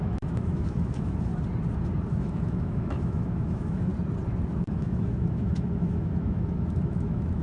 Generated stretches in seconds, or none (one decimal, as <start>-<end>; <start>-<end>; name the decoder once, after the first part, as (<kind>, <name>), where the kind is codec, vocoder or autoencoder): 0.0-1.3 (autoencoder, DAC-VAE); 2.1-3.9; 4.5-7.4